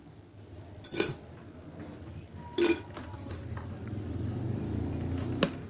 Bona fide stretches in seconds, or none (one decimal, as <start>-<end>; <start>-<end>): 0.0-5.7